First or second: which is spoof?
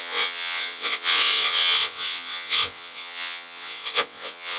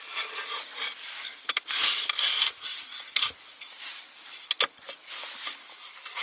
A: first